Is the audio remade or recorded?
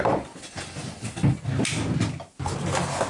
recorded